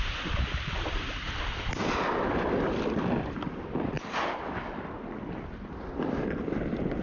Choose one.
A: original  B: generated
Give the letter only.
A